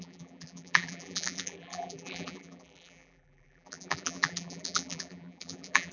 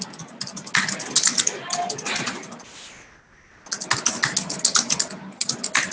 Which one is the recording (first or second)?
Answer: second